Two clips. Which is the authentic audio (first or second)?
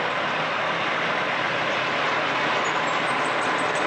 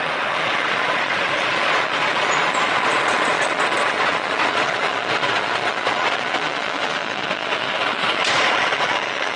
first